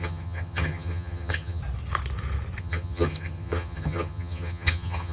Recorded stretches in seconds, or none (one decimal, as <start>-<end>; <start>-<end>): 1.6-2.6